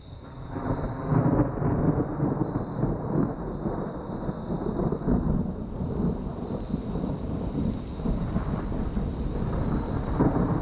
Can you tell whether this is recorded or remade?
recorded